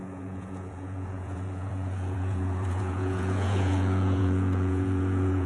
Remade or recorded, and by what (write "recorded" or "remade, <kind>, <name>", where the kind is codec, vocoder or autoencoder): remade, vocoder, Vocos